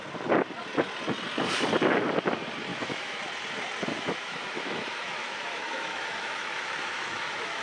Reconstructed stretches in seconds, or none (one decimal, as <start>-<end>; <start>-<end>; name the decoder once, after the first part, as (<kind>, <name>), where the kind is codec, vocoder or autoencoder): 2.7-3.2 (autoencoder, DAC-VAE); 3.9-7.6